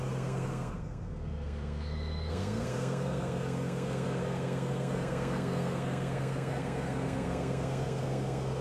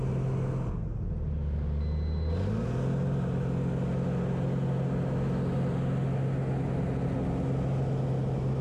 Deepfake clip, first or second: first